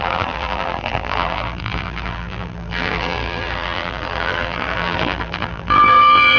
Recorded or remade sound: remade